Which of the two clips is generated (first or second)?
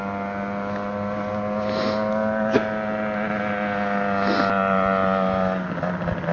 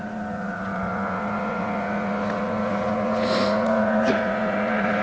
second